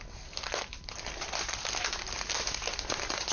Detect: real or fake real